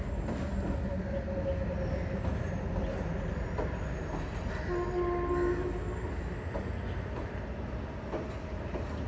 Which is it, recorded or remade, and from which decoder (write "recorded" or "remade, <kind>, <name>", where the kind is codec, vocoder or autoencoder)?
recorded